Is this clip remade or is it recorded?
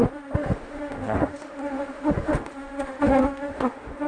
remade